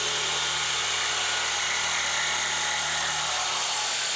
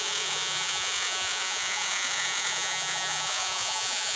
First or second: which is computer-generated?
second